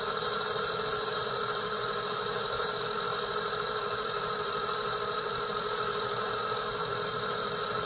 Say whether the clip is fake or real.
fake